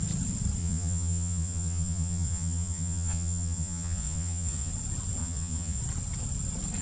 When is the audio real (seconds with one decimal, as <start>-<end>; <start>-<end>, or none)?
0.0-0.6; 4.7-5.2; 5.8-6.8